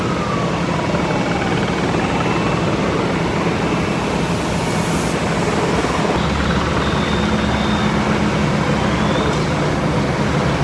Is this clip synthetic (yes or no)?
no